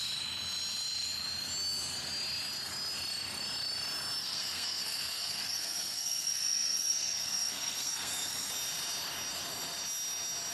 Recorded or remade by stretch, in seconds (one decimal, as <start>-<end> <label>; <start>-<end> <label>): 0.0-4.2 recorded; 4.2-8.5 remade; 8.5-10.5 recorded